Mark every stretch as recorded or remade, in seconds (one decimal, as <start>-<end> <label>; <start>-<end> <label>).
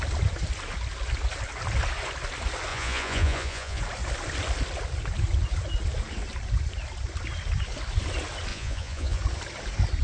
0.0-2.7 recorded; 2.7-3.8 remade; 3.8-8.5 recorded; 8.5-9.2 remade; 9.2-10.0 recorded